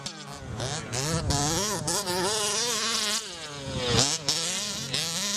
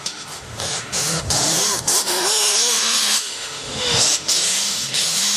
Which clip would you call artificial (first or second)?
second